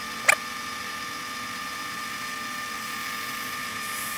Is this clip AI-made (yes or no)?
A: no